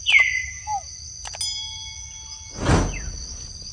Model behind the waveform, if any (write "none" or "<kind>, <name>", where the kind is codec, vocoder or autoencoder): none